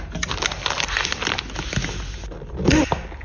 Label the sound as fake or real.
real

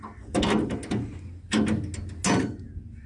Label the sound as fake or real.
real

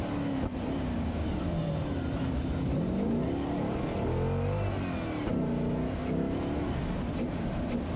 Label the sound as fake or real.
real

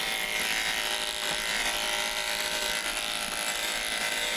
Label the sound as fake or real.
fake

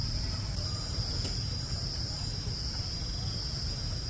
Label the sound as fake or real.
fake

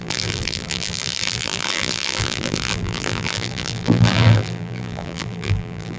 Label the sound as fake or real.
fake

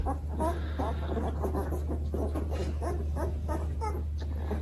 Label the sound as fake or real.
real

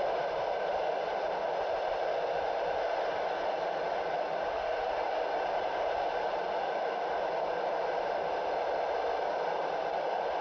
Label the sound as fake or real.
real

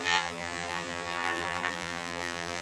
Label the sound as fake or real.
fake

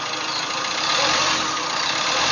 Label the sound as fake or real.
real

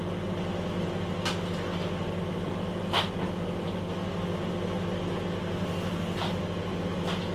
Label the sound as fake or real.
real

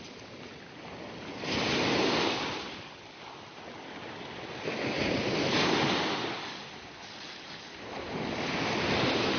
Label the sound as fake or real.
real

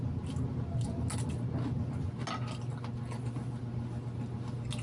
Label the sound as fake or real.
real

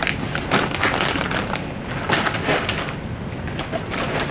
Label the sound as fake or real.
real